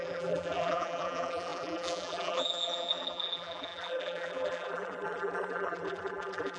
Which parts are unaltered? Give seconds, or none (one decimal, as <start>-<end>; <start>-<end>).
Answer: none